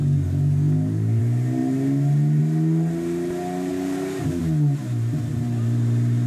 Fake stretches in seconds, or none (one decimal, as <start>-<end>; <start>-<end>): 0.0-1.2; 3.7-4.4